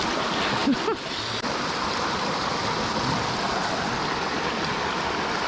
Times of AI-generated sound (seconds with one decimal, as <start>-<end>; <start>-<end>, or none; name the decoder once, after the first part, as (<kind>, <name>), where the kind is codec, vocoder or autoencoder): none